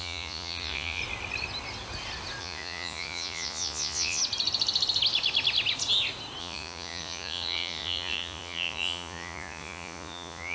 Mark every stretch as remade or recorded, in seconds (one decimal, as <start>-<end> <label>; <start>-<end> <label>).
0.0-1.0 remade; 1.0-2.4 recorded; 2.4-4.2 remade; 4.2-6.4 recorded; 6.4-10.5 remade